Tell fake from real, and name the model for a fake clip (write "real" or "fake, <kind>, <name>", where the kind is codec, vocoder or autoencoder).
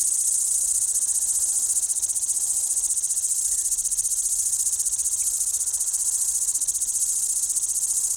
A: real